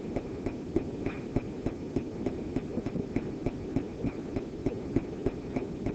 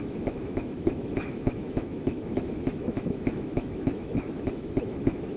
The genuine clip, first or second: first